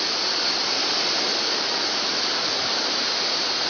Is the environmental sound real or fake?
real